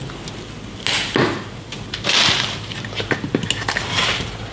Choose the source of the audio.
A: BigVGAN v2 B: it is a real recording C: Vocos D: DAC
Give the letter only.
B